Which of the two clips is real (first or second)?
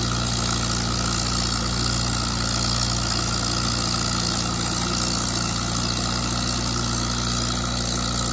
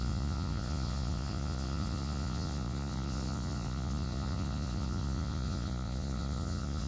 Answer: first